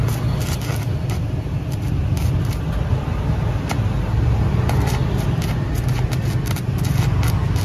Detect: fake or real real